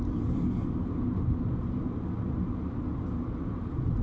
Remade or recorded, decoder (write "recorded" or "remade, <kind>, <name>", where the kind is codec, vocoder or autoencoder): recorded